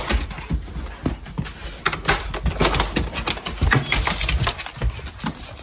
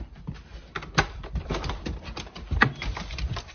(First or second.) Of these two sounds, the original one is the first